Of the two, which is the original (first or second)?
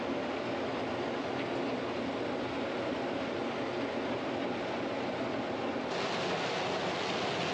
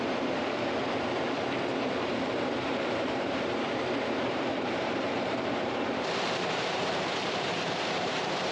first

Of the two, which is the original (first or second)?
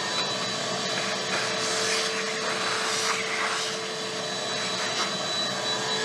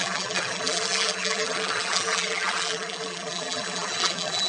first